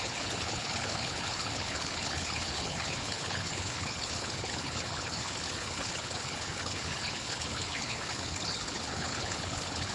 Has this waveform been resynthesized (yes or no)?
yes